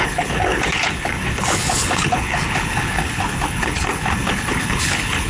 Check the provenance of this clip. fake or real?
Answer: fake